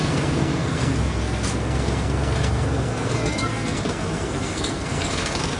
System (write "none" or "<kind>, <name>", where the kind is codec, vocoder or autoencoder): codec, SNAC